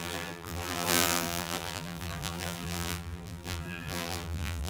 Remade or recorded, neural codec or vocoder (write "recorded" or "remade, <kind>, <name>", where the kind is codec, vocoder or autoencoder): remade, vocoder, BigVGAN v2